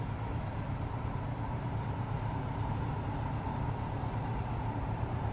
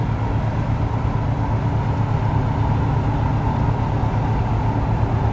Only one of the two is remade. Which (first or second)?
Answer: first